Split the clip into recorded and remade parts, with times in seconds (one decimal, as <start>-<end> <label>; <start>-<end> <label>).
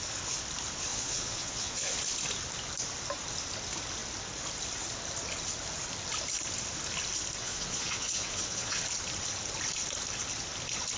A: 0.0-0.9 recorded; 0.9-1.9 remade; 1.9-7.4 recorded; 7.4-8.8 remade; 8.8-11.0 recorded